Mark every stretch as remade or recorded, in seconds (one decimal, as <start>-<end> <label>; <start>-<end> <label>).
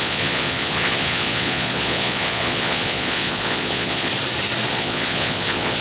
0.0-4.1 remade; 4.1-4.7 recorded; 4.7-5.8 remade